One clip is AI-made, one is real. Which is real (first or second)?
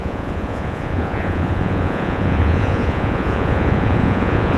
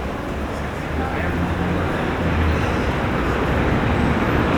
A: second